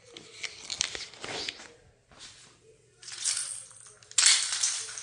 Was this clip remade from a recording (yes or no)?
no